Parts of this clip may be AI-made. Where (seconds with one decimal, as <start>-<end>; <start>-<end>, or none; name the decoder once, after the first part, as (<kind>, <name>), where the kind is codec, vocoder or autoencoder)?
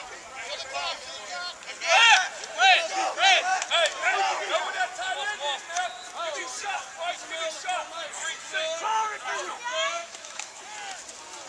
10.0-10.6 (autoencoder, DAC-VAE)